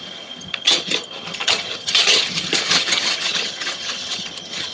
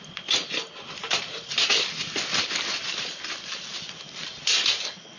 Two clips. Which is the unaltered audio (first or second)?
second